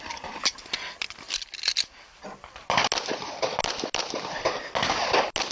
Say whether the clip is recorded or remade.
recorded